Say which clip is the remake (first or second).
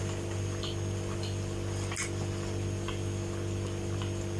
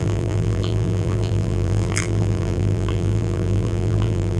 second